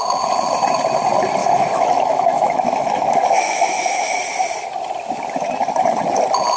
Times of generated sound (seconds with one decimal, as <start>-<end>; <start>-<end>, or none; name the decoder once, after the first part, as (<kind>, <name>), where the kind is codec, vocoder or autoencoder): 1.4-4.2 (autoencoder, DAC-VAE)